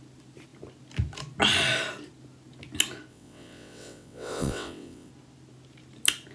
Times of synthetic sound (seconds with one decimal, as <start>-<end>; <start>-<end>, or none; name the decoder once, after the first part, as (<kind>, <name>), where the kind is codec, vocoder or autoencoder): 3.1-5.1 (vocoder, WaveNeXt)